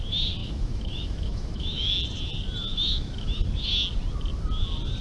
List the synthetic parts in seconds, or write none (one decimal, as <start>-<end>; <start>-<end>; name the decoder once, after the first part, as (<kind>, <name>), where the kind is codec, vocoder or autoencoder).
0.4-1.9 (autoencoder, DAC-VAE); 2.7-3.4